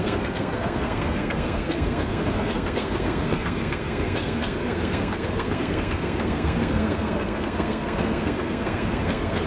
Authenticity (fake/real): fake